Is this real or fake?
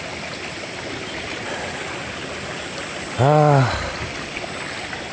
real